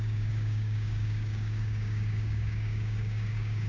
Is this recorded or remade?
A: remade